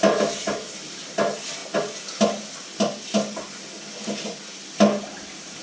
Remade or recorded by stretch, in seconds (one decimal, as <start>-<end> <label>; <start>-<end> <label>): 0.0-1.6 remade; 1.6-5.0 recorded; 5.0-5.6 remade